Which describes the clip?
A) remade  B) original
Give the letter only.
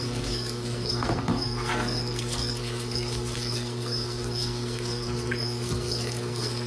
A